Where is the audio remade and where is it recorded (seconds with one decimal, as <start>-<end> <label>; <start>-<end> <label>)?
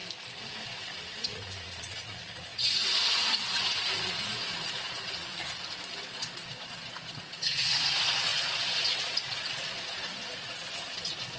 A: 0.0-1.1 recorded; 1.1-5.3 remade; 5.3-6.0 recorded; 6.0-11.4 remade